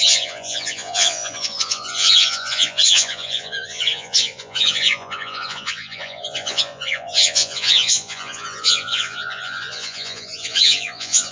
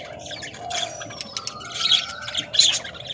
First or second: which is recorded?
second